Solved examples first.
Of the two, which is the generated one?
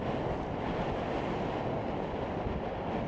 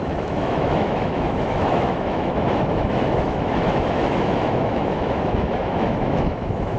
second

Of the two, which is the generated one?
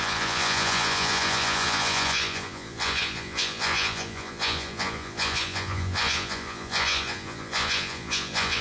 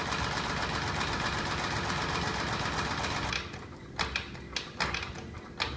first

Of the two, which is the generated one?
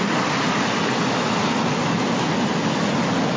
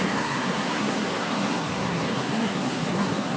second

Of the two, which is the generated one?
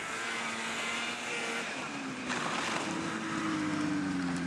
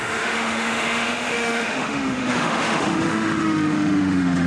second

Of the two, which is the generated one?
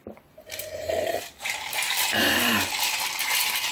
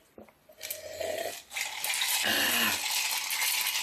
first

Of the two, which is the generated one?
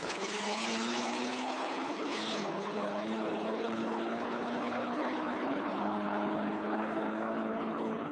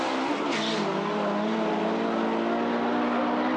first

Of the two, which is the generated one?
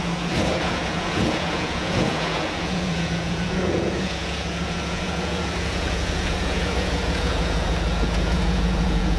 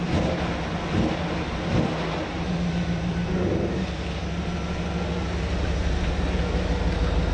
first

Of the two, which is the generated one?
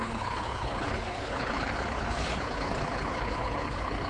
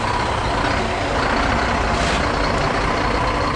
first